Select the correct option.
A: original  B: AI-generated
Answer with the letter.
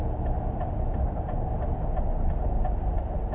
A